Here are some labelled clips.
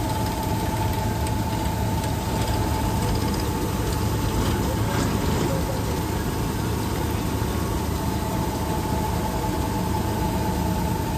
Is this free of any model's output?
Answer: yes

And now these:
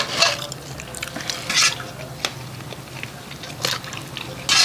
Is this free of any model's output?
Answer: yes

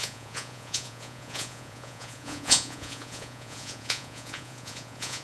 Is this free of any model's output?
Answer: no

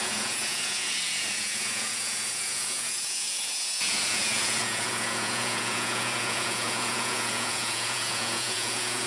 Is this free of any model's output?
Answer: no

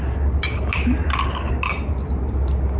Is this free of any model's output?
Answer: yes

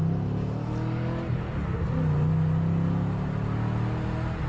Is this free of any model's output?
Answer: yes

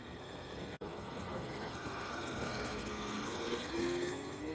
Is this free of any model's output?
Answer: no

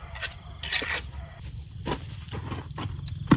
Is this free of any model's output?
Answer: yes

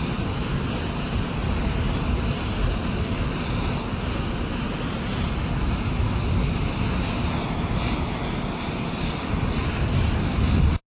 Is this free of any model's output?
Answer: yes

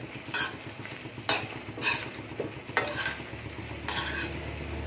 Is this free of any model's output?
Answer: yes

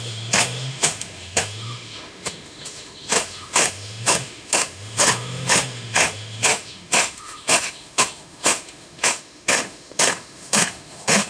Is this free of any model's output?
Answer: no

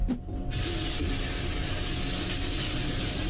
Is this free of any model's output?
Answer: yes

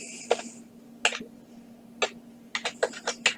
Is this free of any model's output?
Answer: yes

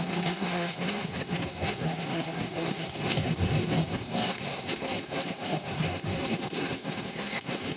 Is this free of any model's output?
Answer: no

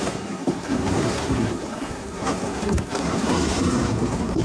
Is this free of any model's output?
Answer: no